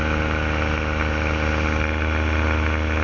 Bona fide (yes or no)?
yes